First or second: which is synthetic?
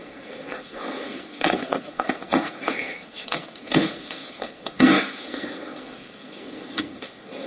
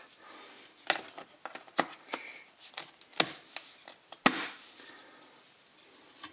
first